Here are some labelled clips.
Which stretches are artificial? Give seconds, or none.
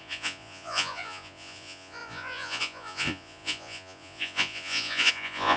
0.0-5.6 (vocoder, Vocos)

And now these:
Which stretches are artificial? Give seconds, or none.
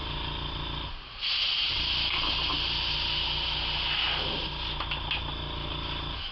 none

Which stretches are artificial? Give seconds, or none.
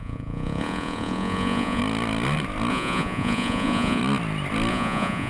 0.0-1.8 (vocoder, Vocos); 2.7-4.0; 4.7-5.3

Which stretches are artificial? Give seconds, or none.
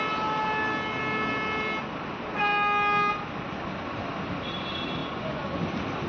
5.0-5.6 (vocoder, Vocos)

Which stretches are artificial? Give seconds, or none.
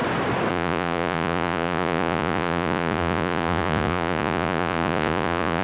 0.5-5.6 (vocoder, Vocos)